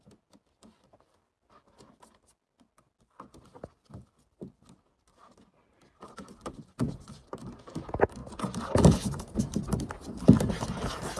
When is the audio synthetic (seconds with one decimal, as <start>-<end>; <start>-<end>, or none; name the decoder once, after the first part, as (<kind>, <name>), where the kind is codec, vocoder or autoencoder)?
5.8-7.6 (vocoder, BigVGAN v2)